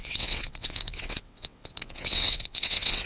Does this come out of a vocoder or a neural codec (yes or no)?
yes